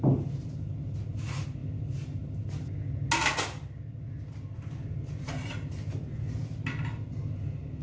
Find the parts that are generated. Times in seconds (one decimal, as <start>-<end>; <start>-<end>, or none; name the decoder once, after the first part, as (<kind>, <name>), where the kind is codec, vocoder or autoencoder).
none